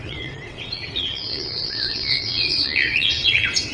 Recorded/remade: remade